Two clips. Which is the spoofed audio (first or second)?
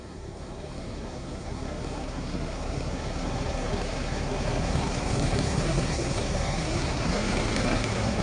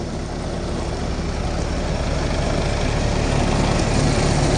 first